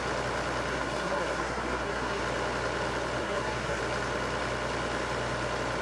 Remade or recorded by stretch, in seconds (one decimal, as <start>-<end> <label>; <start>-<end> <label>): 0.0-0.7 recorded; 0.7-2.2 remade; 2.2-3.2 recorded; 3.2-3.8 remade; 3.8-5.8 recorded